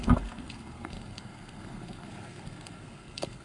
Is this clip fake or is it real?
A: fake